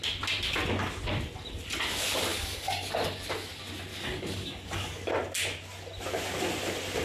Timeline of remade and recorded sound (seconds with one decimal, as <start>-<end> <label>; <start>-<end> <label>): 0.0-2.3 recorded; 2.3-2.9 remade; 2.9-3.9 recorded; 3.9-5.1 remade; 5.1-7.0 recorded